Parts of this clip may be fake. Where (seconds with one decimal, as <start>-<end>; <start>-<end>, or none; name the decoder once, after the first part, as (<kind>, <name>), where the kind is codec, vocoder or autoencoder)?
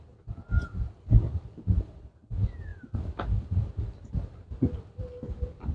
none